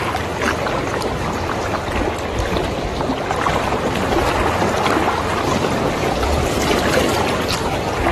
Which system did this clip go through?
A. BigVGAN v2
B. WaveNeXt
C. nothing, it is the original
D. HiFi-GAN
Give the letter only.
C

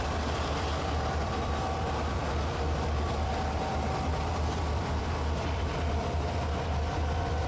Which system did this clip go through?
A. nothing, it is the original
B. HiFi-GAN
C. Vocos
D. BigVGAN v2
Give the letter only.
D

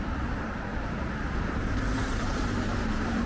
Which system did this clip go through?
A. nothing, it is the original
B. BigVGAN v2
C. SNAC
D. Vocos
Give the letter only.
B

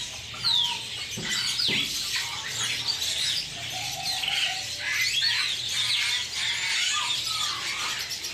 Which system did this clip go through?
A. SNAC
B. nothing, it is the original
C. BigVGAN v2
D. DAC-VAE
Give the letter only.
B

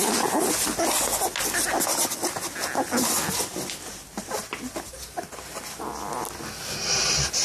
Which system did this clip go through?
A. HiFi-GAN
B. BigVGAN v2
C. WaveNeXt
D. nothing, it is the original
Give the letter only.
D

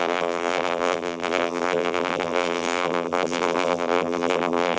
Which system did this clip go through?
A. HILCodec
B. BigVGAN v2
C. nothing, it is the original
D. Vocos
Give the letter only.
B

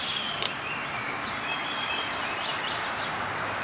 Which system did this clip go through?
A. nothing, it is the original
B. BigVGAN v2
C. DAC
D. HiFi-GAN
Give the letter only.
B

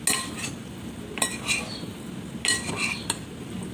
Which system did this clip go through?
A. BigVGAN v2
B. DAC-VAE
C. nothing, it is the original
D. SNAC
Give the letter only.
C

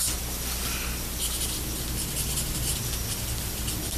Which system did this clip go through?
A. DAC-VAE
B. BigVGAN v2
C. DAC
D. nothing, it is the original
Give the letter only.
D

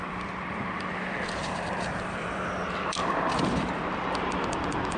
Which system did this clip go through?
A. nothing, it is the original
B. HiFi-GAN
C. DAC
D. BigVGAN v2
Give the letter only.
D